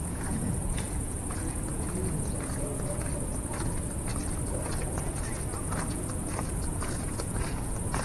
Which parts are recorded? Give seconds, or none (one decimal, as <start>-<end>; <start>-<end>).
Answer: 4.1-4.7